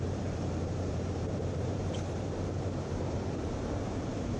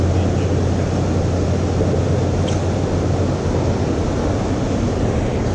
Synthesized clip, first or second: first